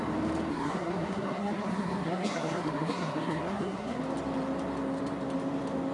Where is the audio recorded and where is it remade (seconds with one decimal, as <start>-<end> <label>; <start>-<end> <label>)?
0.0-0.5 recorded; 0.5-4.0 remade; 4.0-5.9 recorded